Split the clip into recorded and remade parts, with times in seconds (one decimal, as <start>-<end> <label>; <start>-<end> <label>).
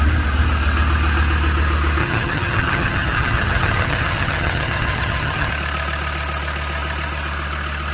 0.0-2.0 recorded; 2.0-5.5 remade; 5.5-7.9 recorded